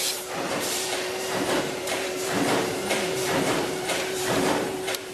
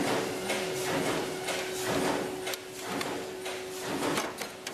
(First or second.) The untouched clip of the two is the second